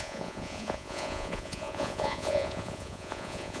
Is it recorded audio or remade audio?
remade